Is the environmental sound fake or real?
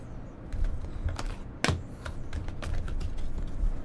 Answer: real